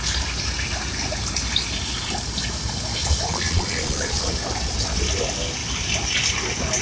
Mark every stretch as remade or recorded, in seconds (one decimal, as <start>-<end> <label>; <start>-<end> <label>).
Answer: 0.0-3.0 recorded; 3.0-4.3 remade; 4.3-6.8 recorded